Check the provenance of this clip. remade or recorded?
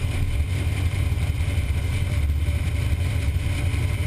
remade